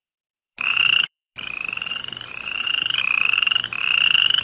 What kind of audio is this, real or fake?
fake